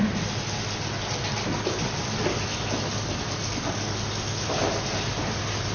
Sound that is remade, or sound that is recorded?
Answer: recorded